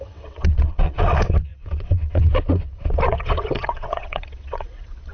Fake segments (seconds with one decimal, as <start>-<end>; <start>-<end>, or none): 0.0-5.1